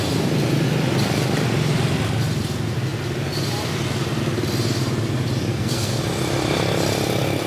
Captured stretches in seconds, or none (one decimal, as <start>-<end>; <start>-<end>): 0.0-5.5; 6.0-7.5